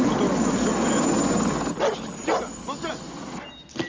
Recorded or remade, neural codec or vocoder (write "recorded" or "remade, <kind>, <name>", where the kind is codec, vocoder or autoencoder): recorded